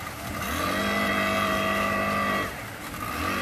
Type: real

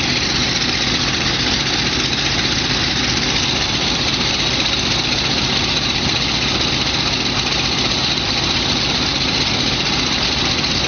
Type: real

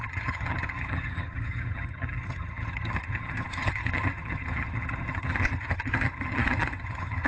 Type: fake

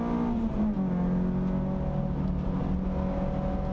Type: real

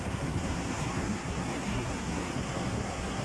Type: fake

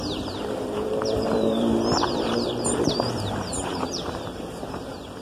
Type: fake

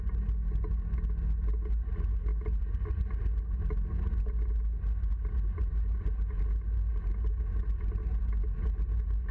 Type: real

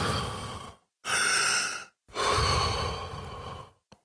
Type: real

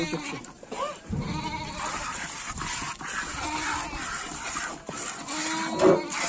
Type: real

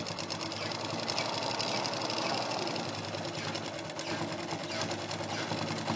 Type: real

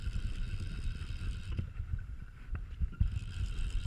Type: real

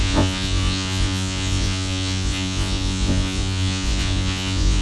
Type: fake